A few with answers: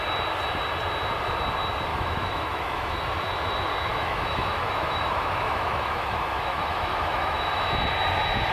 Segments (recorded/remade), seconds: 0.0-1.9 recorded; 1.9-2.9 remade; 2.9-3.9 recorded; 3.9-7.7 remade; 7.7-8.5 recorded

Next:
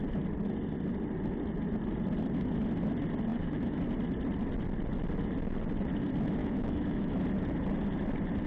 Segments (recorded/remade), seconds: 0.0-3.3 recorded; 3.3-3.8 remade; 3.8-6.4 recorded; 6.4-7.2 remade; 7.2-8.5 recorded

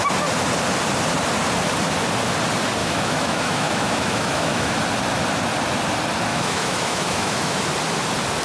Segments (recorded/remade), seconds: 0.0-2.8 recorded; 2.8-4.7 remade; 4.7-6.3 recorded; 6.3-7.6 remade; 7.6-8.4 recorded